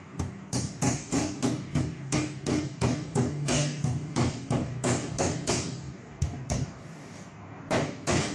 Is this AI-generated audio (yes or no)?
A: yes